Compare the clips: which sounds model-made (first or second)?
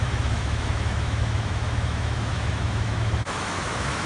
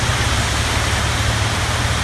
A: first